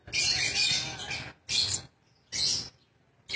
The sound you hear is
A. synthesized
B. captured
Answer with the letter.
B